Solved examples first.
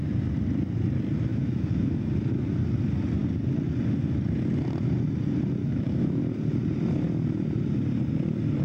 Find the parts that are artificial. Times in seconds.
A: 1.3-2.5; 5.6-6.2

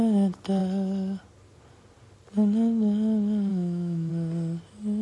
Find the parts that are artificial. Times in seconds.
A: 3.5-4.1

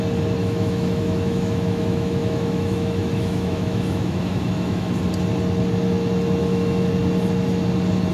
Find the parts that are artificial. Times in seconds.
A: 0.4-4.9; 6.4-6.9